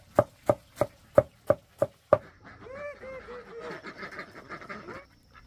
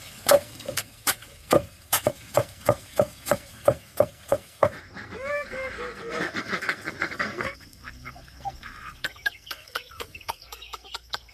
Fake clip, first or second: second